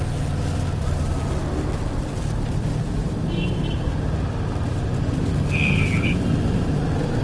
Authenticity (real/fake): real